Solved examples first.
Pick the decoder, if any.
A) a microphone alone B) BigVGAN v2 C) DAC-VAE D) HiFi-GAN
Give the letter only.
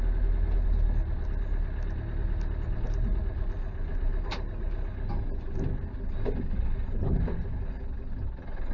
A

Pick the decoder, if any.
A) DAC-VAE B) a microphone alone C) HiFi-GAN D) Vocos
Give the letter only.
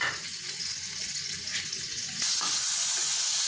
D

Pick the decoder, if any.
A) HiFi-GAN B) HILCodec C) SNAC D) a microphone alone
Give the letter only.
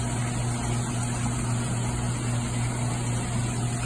D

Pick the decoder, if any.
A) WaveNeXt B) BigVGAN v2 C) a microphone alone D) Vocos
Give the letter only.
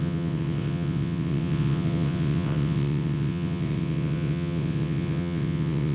A